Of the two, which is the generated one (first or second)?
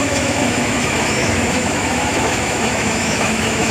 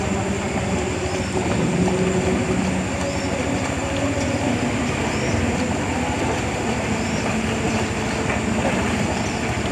first